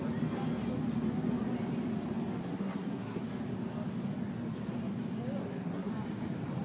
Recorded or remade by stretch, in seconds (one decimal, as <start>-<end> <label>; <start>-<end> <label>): 0.0-2.4 recorded; 2.4-3.2 remade; 3.2-5.4 recorded; 5.4-5.9 remade; 5.9-6.6 recorded